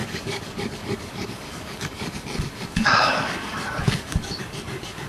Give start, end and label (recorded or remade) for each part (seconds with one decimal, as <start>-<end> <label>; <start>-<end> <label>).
0.0-5.1 remade